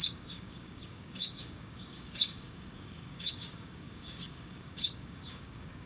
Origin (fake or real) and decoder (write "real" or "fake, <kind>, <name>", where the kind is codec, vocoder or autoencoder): fake, codec, DAC